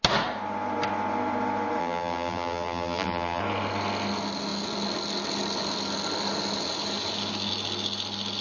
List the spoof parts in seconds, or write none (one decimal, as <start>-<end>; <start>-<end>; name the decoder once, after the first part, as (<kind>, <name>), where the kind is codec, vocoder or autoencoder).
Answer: 1.8-3.4 (vocoder, BigVGAN v2)